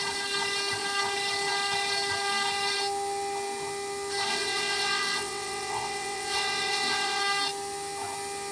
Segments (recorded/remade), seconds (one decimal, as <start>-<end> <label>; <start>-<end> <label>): 0.0-4.3 recorded; 4.3-7.2 remade; 7.2-8.5 recorded